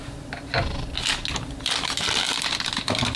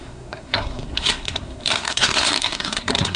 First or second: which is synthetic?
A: second